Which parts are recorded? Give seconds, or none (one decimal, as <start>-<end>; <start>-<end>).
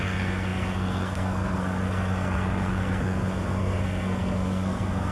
none